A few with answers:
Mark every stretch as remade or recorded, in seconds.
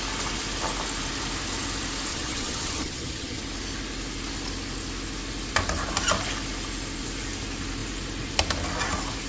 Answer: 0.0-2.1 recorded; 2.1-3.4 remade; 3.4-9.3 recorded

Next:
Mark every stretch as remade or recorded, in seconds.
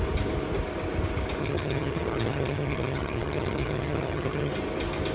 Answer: 0.0-1.4 recorded; 1.4-4.5 remade; 4.5-5.1 recorded